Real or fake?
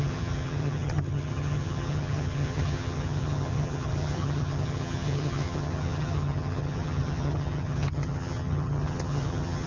fake